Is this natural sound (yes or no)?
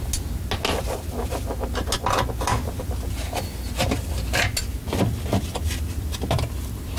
yes